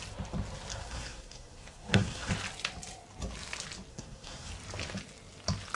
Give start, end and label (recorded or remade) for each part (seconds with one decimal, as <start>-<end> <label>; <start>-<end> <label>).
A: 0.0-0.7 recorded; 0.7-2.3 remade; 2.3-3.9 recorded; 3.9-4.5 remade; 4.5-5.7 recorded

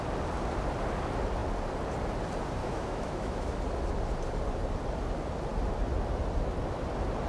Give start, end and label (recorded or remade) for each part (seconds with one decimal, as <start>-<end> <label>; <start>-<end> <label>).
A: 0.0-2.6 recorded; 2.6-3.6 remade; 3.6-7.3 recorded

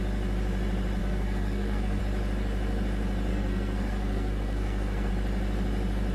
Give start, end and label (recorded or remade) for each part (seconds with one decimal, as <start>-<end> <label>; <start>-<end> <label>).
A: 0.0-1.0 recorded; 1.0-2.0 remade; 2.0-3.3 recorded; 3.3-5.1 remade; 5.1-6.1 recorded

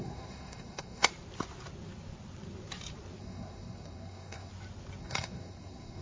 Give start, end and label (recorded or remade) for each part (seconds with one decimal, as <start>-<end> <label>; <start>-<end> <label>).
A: 0.0-1.1 remade; 1.1-3.2 recorded; 3.2-4.5 remade; 4.5-5.0 recorded; 5.0-6.0 remade